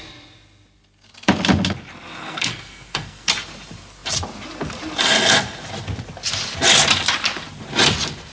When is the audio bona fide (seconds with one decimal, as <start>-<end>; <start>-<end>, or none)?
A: 0.0-2.2; 3.3-8.3